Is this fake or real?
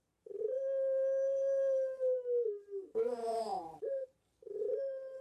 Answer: fake